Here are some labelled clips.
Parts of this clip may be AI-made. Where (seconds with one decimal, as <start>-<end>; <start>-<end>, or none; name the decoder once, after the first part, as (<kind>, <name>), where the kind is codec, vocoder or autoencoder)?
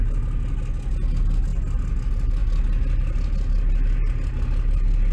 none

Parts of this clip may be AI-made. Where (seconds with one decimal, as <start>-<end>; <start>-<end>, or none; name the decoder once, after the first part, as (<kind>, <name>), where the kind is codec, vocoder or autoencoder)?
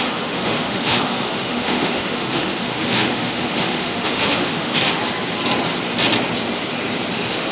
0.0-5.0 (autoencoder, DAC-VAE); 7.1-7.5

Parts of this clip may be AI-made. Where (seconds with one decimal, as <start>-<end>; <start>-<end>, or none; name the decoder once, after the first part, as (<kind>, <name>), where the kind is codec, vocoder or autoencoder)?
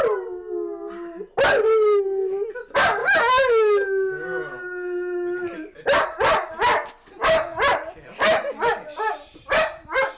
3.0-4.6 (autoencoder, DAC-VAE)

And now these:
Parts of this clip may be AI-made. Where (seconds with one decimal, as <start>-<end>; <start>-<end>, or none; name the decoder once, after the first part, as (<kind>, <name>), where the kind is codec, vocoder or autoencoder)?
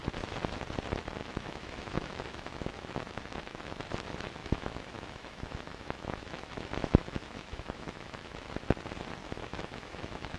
1.2-3.8 (autoencoder, DAC-VAE); 4.4-8.5; 9.2-10.4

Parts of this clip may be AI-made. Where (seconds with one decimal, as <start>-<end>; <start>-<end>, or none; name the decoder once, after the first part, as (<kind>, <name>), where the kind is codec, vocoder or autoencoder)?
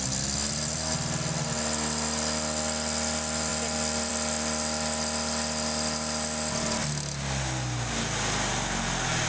none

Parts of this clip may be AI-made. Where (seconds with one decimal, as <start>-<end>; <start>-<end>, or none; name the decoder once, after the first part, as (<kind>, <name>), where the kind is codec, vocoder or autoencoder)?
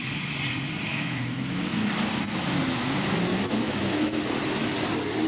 0.9-1.9 (autoencoder, DAC-VAE); 3.3-4.3